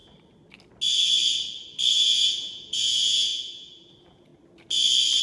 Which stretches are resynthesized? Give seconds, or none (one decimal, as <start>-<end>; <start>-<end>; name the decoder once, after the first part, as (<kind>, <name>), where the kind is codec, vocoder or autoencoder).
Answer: 1.9-4.3 (vocoder, Vocos)